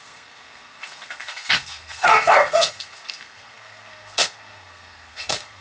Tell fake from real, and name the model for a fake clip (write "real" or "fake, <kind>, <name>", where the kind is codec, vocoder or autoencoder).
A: fake, codec, SNAC